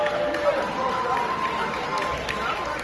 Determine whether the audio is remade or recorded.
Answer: recorded